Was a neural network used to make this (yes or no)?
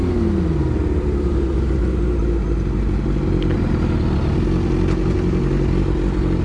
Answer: no